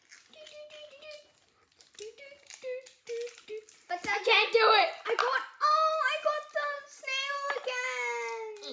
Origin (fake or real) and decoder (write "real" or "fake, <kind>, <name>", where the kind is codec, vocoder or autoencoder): real